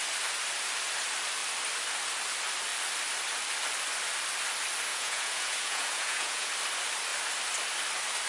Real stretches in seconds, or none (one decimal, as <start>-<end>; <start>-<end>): 0.0-4.9; 6.5-8.3